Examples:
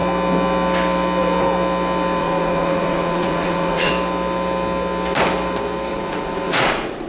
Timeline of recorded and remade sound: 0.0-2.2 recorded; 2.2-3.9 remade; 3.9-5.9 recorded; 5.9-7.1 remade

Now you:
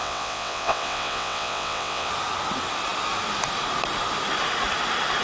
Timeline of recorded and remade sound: 0.0-2.1 remade; 2.1-5.2 recorded

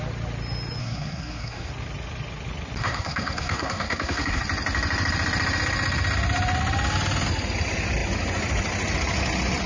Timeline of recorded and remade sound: 0.0-0.8 recorded; 0.8-1.7 remade; 1.7-2.8 recorded; 2.8-4.4 remade; 4.4-9.7 recorded

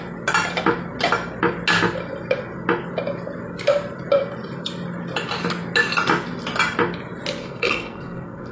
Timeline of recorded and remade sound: 0.0-7.4 recorded; 7.4-8.5 remade

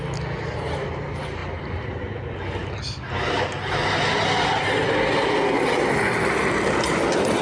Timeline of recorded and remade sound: 0.0-1.4 recorded; 1.4-1.9 remade; 1.9-7.4 recorded

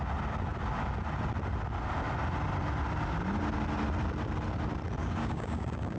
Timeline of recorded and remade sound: 0.0-5.0 recorded; 5.0-6.0 remade

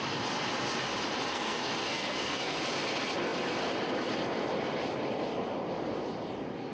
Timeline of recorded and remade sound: 0.0-1.3 recorded; 1.3-2.6 remade; 2.6-6.7 recorded

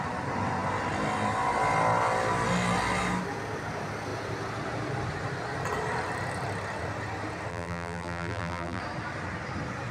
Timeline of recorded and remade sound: 0.0-7.5 recorded; 7.5-8.8 remade; 8.8-9.9 recorded